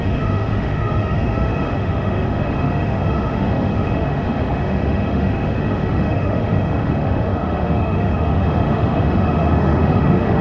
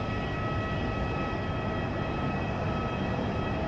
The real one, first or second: second